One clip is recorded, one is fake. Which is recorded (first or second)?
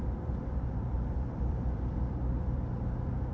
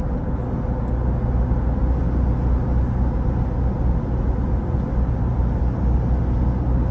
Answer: second